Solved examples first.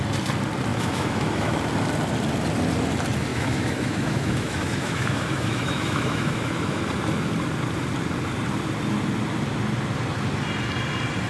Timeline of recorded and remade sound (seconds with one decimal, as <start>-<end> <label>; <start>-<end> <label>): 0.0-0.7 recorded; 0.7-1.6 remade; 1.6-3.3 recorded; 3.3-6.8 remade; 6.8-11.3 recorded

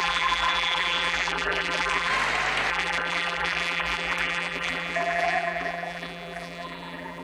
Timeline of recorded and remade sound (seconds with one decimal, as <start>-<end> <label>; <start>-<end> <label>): 0.0-2.1 remade; 2.1-2.7 recorded; 2.7-7.2 remade

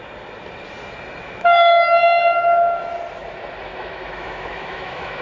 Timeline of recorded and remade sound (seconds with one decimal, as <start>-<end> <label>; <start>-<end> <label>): 0.0-1.2 recorded; 1.2-2.8 remade; 2.8-3.7 recorded; 3.7-5.2 remade